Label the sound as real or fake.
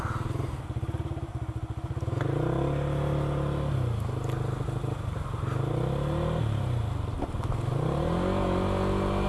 real